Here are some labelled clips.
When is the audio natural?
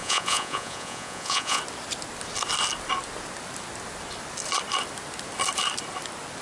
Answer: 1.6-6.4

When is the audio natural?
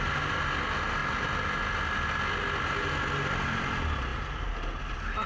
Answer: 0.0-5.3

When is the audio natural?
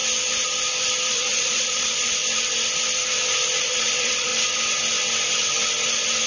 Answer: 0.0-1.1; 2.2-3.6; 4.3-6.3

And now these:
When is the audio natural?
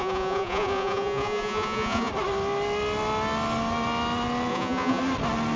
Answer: 2.1-4.5; 5.0-5.6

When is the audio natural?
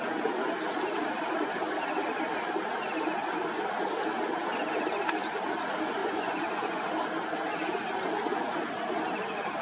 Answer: 0.0-6.0; 6.9-9.6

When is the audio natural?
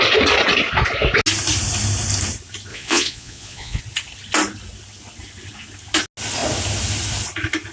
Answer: 0.0-2.7; 3.8-7.7